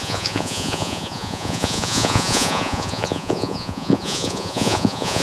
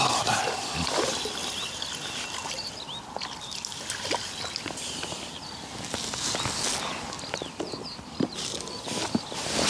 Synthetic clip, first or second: first